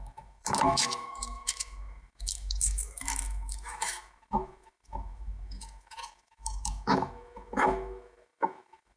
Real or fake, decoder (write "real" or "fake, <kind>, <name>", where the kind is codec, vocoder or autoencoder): fake, autoencoder, DAC-VAE